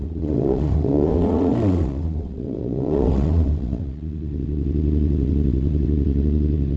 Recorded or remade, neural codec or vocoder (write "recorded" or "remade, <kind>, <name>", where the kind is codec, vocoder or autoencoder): remade, vocoder, WaveNeXt